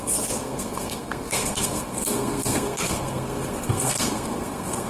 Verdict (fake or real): fake